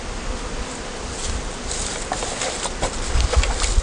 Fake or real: real